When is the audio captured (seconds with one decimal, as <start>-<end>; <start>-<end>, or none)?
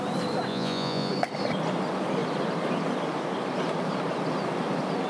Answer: 0.0-0.5; 1.1-5.1